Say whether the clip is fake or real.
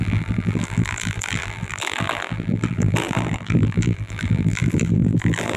fake